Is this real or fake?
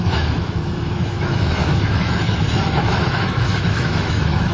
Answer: fake